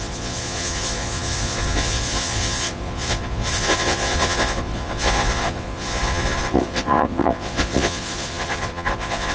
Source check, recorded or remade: remade